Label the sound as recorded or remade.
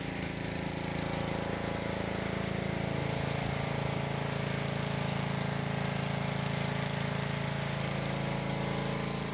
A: recorded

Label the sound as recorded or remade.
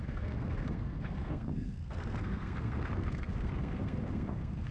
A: remade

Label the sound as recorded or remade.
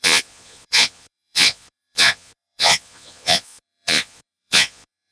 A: remade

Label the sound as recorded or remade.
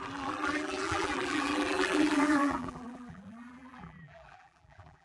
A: remade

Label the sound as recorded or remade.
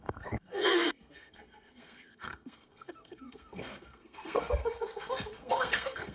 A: remade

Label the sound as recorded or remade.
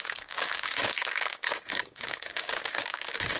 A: remade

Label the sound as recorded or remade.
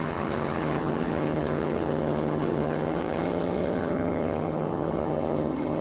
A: remade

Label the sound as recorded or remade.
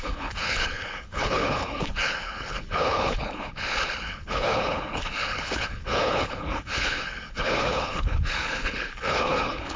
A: remade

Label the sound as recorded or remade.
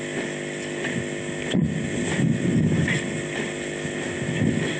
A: recorded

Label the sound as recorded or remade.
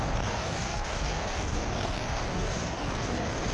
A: remade